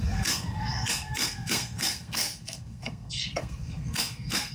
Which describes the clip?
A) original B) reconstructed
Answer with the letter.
B